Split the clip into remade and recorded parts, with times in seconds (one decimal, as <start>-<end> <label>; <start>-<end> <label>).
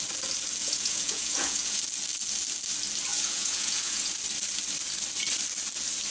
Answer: 0.0-0.6 recorded; 0.6-1.8 remade; 1.8-3.1 recorded; 3.1-4.1 remade; 4.1-6.1 recorded